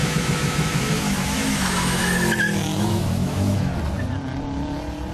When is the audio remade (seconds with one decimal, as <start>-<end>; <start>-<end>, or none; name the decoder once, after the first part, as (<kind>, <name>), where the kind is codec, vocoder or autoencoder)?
0.0-2.0 (autoencoder, DAC-VAE); 2.7-3.8